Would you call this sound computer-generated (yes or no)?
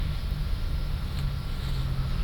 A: no